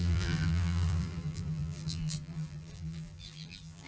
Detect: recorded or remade remade